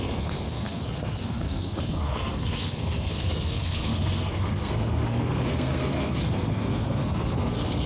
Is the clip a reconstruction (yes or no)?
yes